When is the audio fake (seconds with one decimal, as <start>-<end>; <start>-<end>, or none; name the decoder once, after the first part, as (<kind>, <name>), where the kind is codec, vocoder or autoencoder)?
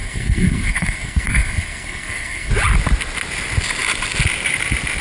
0.0-2.5 (codec, SNAC)